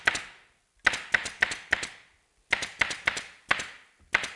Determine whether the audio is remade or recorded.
recorded